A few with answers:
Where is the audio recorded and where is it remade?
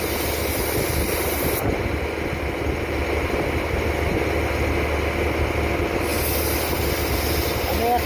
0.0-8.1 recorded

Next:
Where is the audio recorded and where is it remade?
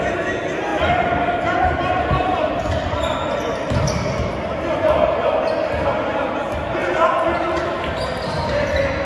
0.0-0.7 recorded; 0.7-4.3 remade; 4.3-6.8 recorded; 6.8-7.5 remade; 7.5-9.0 recorded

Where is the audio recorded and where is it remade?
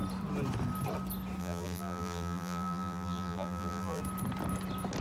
0.0-1.4 recorded; 1.4-4.0 remade; 4.0-5.0 recorded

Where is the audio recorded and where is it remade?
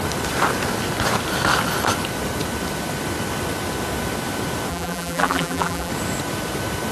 0.0-4.7 recorded; 4.7-5.9 remade; 5.9-6.9 recorded